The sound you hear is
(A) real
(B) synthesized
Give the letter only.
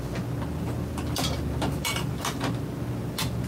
A